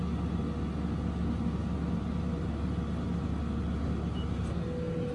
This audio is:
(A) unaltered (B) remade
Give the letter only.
A